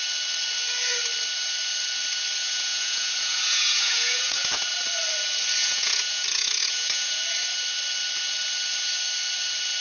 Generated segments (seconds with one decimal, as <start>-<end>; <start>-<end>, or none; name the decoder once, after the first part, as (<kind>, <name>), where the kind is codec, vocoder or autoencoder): 2.4-4.6 (vocoder, Vocos); 5.6-7.2